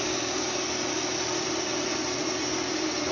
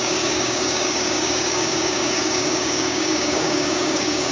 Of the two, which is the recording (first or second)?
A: first